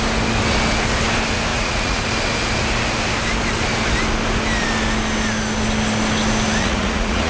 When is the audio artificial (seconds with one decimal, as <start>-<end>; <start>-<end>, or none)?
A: 1.5-2.0; 6.6-7.3